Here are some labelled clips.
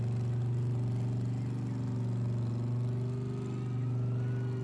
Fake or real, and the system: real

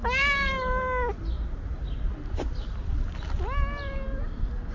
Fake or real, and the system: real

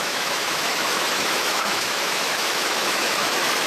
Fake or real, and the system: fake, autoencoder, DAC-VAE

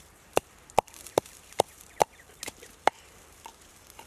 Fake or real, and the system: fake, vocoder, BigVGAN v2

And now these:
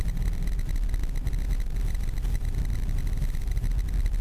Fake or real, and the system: real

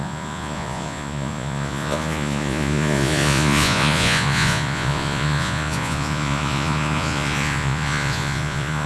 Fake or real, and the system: fake, vocoder, Vocos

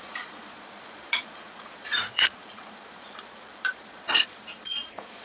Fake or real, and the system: fake, vocoder, Vocos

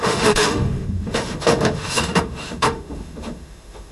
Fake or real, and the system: fake, autoencoder, DAC-VAE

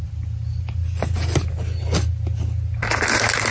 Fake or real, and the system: real